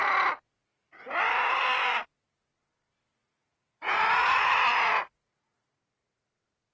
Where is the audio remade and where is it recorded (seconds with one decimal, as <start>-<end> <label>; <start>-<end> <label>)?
0.0-0.7 recorded; 0.7-1.6 remade; 1.6-3.1 recorded; 3.1-6.7 remade

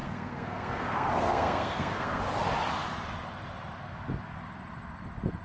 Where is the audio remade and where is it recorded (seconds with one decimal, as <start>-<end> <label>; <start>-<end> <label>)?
0.0-2.2 remade; 2.2-5.4 recorded

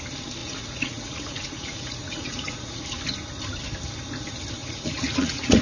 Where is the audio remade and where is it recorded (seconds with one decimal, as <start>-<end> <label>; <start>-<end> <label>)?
0.0-0.4 recorded; 0.4-2.8 remade; 2.8-4.6 recorded; 4.6-5.6 remade

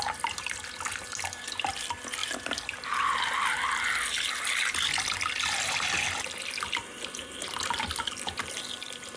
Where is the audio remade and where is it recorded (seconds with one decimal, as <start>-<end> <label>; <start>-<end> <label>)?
0.0-9.2 recorded

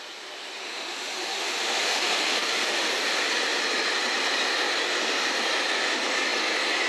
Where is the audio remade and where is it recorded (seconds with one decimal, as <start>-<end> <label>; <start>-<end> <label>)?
0.0-0.6 recorded; 0.6-2.8 remade; 2.8-6.9 recorded